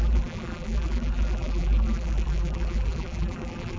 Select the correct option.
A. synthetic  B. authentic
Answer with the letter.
A